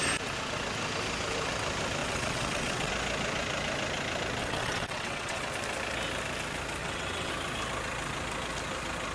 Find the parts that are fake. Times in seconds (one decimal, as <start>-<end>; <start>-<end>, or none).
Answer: 2.0-2.9; 4.4-5.5; 6.8-7.3